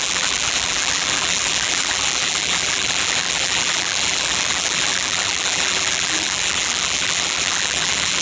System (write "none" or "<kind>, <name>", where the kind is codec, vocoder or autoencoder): vocoder, BigVGAN v2